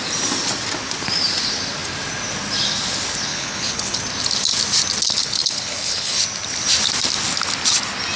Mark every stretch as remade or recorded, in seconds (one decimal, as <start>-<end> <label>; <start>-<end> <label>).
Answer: 0.0-3.3 recorded; 3.3-4.0 remade; 4.0-5.2 recorded; 5.2-6.2 remade; 6.2-8.2 recorded